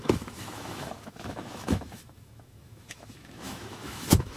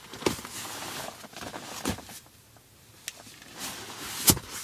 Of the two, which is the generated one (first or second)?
first